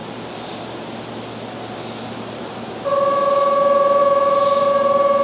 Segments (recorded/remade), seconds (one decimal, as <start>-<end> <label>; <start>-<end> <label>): 0.0-0.8 remade; 0.8-4.0 recorded; 4.0-4.7 remade; 4.7-5.2 recorded

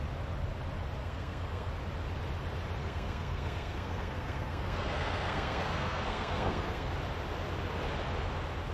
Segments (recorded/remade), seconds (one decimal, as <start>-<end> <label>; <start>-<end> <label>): 0.0-1.0 recorded; 1.0-1.7 remade; 1.7-2.8 recorded; 2.8-6.9 remade; 6.9-8.7 recorded

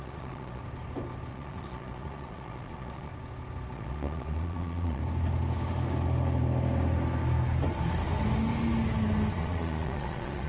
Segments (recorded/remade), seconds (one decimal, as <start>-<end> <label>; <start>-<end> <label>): 0.0-0.6 remade; 0.6-1.3 recorded; 1.3-3.1 remade; 3.1-3.7 recorded; 3.7-5.0 remade; 5.0-9.3 recorded; 9.3-10.5 remade

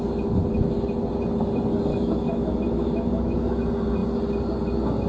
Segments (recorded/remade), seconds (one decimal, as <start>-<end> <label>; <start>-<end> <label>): 0.0-1.9 recorded; 1.9-3.6 remade; 3.6-5.1 recorded

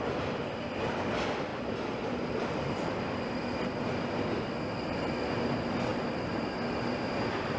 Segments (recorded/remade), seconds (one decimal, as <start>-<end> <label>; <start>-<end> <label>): 0.0-1.5 recorded; 1.5-4.1 remade; 4.1-5.9 recorded; 5.9-7.0 remade; 7.0-7.6 recorded

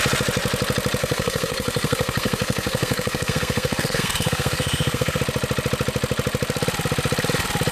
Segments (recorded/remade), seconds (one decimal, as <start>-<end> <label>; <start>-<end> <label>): 0.0-1.0 recorded; 1.0-5.2 remade; 5.2-7.7 recorded

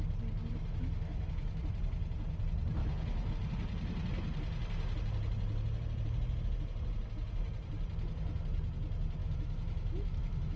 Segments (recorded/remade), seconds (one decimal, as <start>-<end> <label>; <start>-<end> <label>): 0.0-0.5 recorded; 0.5-1.6 remade; 1.6-2.8 recorded; 2.8-3.3 remade; 3.3-9.2 recorded; 9.2-10.6 remade

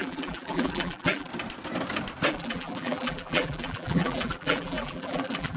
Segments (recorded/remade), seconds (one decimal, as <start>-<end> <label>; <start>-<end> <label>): 0.0-1.3 remade; 1.3-2.3 recorded; 2.3-5.6 remade